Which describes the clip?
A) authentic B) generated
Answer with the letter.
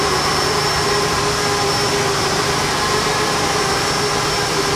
B